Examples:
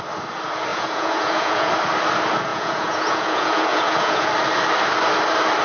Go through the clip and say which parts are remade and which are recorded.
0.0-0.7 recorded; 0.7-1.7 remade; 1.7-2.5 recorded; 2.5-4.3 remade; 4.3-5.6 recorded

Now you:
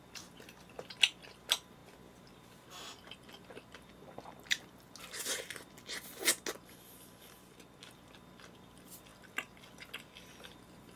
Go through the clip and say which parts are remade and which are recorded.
0.0-11.0 recorded